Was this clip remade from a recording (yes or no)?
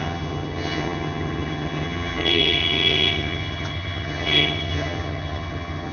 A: yes